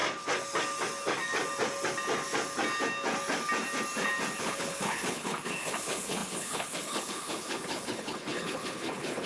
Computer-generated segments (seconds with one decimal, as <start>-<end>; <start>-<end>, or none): 4.4-9.3